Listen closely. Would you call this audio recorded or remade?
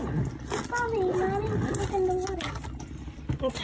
recorded